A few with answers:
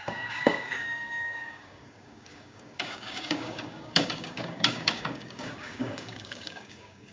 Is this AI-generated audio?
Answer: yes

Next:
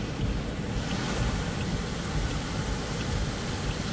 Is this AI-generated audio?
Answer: no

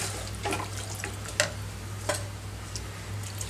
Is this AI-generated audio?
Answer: no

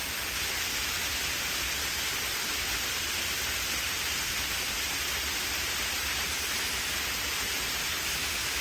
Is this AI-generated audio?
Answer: no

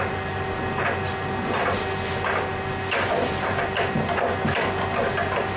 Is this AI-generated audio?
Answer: no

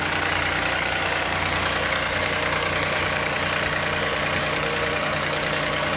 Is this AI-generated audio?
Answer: yes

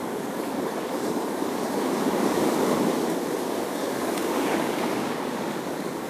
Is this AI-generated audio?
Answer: yes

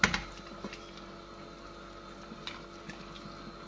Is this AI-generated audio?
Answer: no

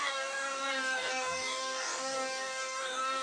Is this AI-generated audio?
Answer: yes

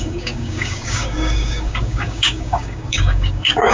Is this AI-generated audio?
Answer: yes